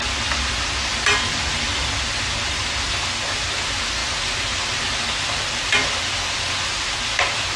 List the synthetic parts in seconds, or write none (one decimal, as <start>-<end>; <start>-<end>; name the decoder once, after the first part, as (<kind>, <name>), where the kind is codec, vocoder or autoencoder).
none